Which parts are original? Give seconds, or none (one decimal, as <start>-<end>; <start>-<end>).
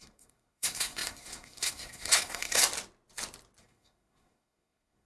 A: 2.6-3.6